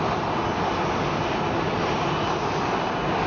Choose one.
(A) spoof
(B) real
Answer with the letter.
B